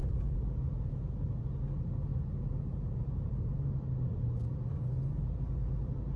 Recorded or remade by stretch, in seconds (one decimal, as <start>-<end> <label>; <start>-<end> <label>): 0.0-1.4 remade; 1.4-2.1 recorded; 2.1-3.6 remade; 3.6-6.2 recorded